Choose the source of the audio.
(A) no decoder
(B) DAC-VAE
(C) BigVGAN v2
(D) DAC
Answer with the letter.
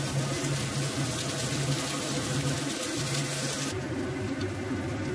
A